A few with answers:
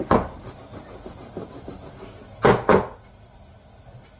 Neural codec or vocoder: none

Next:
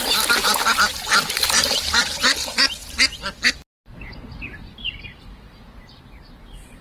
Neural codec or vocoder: none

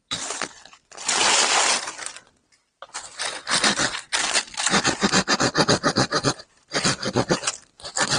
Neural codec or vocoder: none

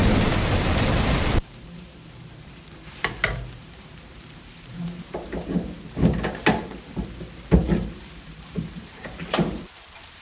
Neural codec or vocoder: vocoder, BigVGAN v2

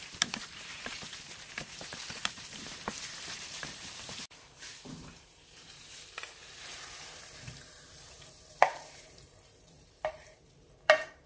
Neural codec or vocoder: vocoder, BigVGAN v2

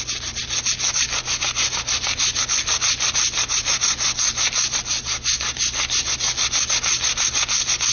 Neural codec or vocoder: none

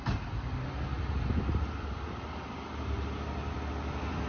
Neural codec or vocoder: none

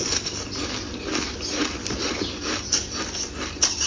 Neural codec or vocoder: vocoder, BigVGAN v2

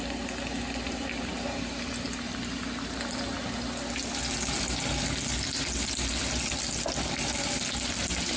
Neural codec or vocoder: none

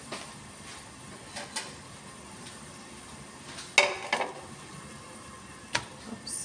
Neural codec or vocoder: none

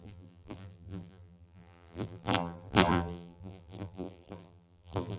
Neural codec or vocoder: vocoder, BigVGAN v2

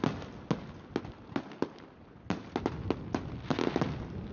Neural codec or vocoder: none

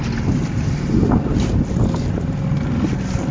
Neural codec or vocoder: none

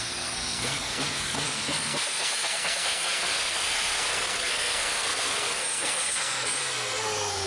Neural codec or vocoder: codec, SNAC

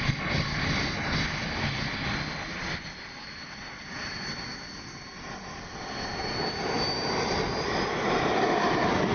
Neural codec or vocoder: none